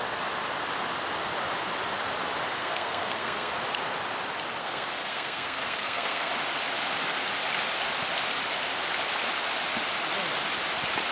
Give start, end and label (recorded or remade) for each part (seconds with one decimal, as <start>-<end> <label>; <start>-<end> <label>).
0.0-2.6 recorded; 2.6-3.5 remade; 3.5-4.6 recorded; 4.6-6.3 remade; 6.3-11.1 recorded